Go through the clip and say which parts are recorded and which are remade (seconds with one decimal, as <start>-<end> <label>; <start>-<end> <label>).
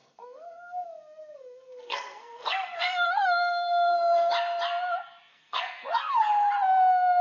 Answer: 0.0-4.3 remade; 4.3-5.3 recorded; 5.3-6.2 remade; 6.2-7.2 recorded